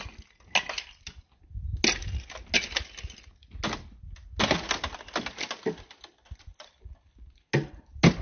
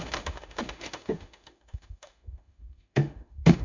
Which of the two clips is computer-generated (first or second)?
second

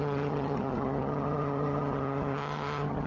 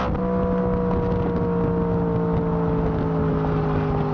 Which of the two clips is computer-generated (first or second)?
first